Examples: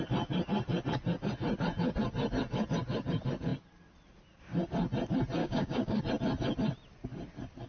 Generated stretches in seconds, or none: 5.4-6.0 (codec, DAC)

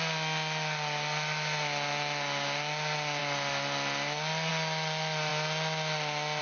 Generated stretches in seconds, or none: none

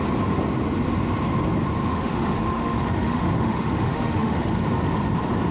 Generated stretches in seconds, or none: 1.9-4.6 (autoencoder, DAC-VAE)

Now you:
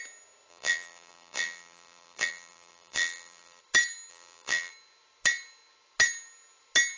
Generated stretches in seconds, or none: 0.5-3.6 (vocoder, BigVGAN v2); 4.1-4.7

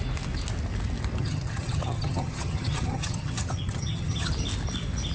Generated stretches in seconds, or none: 1.2-4.3 (vocoder, HiFi-GAN)

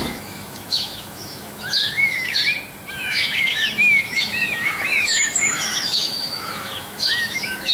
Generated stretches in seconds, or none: 0.0-2.4 (autoencoder, DAC-VAE); 2.9-7.7

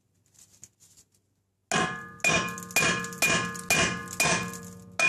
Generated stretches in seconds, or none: none

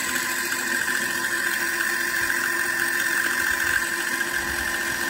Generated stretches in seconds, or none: none